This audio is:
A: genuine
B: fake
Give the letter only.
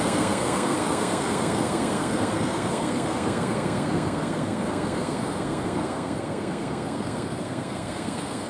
B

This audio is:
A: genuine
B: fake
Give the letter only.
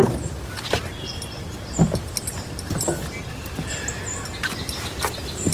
A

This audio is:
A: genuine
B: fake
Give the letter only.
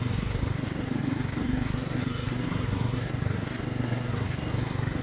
B